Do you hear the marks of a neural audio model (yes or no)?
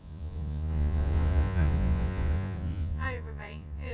yes